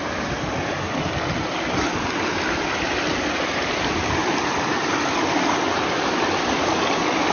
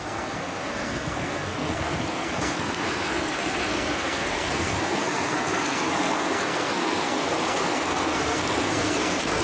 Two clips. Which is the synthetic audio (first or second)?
second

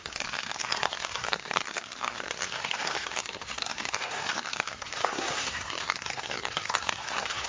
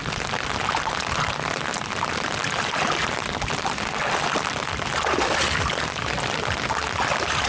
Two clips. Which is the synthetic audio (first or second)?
first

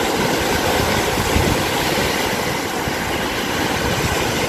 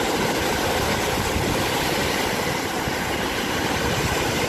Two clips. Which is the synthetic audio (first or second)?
second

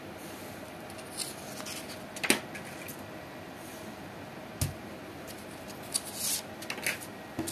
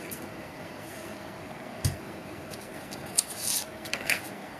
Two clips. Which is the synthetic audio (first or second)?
second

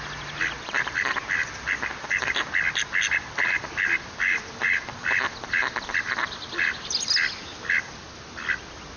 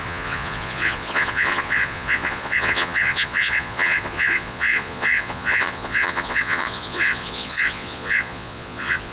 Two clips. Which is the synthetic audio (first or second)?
second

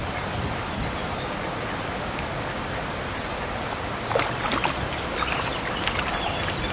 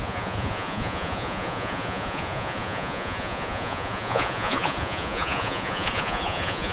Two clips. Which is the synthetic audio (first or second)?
second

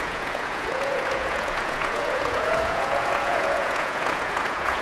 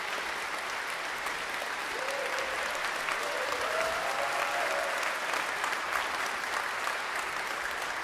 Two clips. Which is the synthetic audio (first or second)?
first